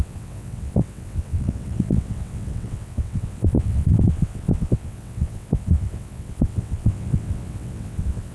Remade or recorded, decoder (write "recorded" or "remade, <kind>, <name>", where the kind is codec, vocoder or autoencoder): remade, vocoder, WaveNeXt